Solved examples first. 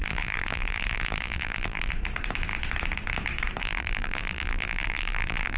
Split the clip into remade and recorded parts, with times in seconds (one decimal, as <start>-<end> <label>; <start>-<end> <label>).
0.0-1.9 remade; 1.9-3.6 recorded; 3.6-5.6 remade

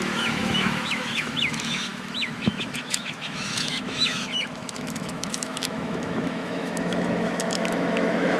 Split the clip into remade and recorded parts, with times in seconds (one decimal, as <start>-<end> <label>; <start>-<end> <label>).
0.0-8.4 remade

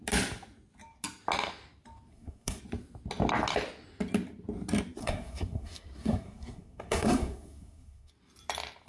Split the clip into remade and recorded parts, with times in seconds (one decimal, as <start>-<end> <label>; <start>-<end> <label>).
0.0-2.1 recorded; 2.1-2.6 remade; 2.6-5.0 recorded; 5.0-8.1 remade; 8.1-8.9 recorded

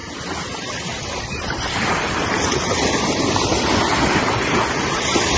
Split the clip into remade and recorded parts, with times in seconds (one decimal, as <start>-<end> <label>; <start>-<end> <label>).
0.0-5.4 remade